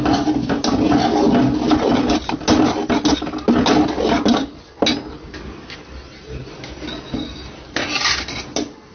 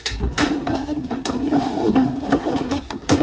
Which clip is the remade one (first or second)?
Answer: second